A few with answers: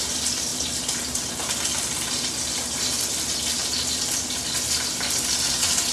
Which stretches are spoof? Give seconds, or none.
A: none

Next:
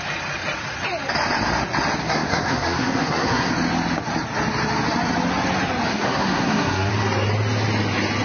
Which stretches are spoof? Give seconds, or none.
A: 2.0-3.5 (codec, SNAC); 5.9-6.9

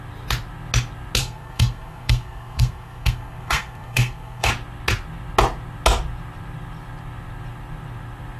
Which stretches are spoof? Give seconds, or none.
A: 1.2-4.5 (codec, SNAC)

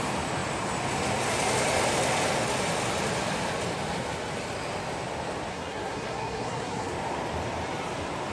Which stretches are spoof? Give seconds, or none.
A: 5.5-6.9 (codec, SNAC)

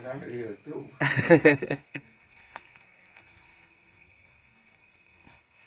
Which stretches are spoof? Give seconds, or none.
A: 1.4-5.7 (codec, SNAC)

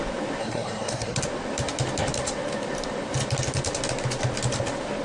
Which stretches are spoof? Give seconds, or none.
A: 0.4-1.2 (codec, SNAC)

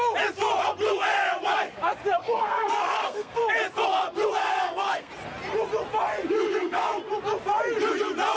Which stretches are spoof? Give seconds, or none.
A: 2.2-3.4 (codec, SNAC); 4.4-5.1; 6.3-7.0

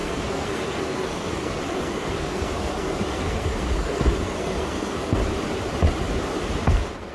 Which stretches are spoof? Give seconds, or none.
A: 0.0-5.2 (codec, SNAC); 6.6-7.1